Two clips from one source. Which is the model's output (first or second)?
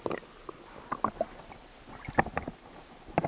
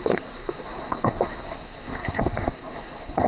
second